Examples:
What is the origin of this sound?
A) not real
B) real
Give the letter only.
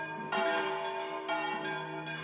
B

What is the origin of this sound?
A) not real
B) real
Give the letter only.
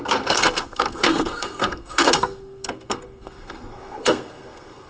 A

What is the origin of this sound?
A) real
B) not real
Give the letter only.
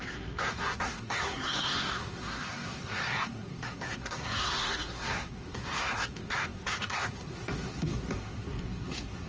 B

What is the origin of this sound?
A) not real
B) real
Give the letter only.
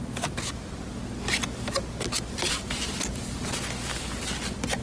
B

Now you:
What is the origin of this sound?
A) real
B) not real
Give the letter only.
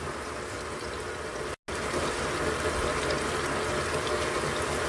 A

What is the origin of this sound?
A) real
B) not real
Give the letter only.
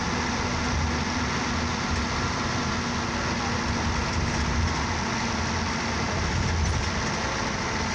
A